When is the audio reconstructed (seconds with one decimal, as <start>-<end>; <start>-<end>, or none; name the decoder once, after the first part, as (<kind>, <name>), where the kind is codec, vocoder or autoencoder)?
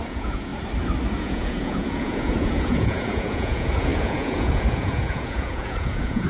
0.0-0.5 (vocoder, Vocos); 1.2-6.3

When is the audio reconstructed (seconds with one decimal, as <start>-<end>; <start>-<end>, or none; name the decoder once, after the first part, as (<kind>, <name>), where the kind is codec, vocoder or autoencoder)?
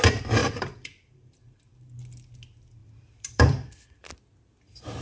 0.4-2.0 (vocoder, BigVGAN v2); 2.8-4.1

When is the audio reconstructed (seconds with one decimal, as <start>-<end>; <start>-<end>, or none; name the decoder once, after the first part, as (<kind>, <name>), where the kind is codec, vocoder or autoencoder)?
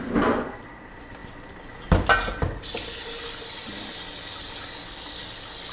none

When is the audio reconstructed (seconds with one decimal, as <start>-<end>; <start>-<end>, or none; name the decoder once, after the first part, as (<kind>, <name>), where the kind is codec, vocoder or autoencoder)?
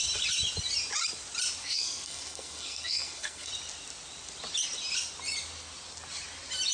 1.6-3.5 (codec, SNAC)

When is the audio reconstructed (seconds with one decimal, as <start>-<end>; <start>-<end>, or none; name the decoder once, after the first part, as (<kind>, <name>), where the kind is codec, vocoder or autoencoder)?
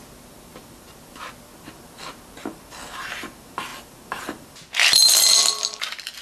none